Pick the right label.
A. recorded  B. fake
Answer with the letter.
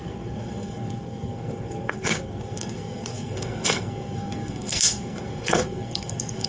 B